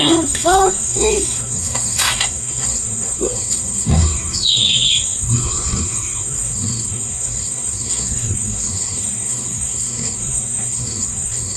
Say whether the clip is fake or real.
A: fake